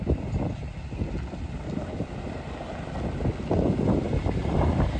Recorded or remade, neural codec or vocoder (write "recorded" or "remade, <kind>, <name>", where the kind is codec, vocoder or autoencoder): recorded